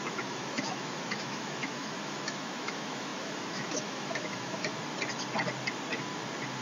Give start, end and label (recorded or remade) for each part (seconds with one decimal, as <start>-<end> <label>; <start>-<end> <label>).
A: 0.0-4.7 remade; 4.7-6.6 recorded